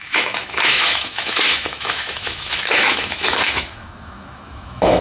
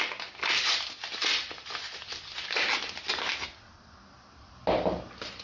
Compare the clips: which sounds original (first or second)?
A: second